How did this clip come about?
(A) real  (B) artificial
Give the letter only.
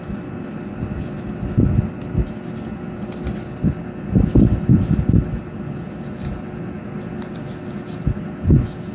A